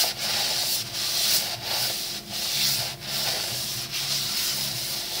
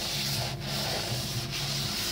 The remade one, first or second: second